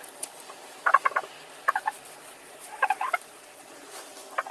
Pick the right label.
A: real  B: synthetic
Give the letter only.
B